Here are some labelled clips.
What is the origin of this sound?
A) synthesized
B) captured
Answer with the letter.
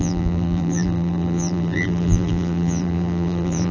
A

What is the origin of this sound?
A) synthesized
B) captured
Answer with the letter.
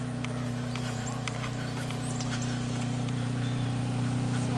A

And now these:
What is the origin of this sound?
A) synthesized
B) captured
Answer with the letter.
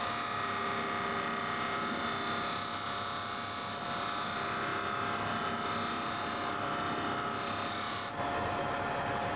B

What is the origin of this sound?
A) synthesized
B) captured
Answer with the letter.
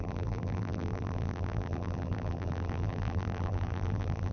A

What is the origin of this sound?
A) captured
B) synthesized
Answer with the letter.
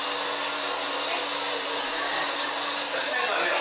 A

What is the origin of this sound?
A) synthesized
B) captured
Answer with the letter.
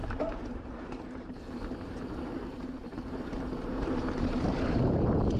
A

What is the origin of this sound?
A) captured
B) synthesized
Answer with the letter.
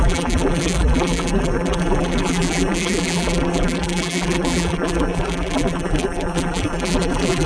B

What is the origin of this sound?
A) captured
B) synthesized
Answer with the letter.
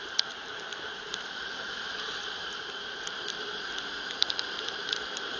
B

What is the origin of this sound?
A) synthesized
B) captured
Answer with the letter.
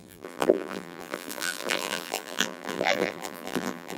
A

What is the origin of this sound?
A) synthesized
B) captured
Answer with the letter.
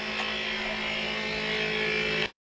B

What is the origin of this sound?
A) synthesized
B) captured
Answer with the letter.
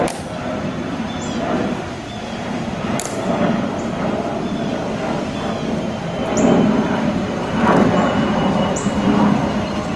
A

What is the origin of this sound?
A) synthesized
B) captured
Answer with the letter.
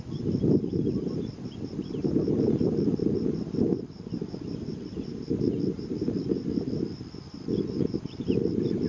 B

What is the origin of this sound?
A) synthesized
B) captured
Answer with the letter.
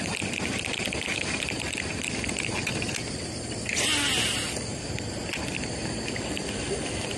B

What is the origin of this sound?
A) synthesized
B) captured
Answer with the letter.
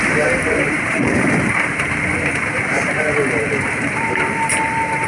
A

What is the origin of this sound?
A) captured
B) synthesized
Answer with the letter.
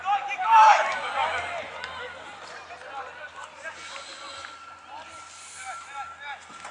A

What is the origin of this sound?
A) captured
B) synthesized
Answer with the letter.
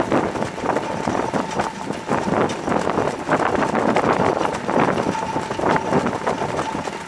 A